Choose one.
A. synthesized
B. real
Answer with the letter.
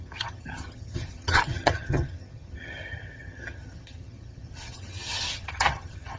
A